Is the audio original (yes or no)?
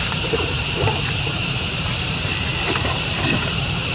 no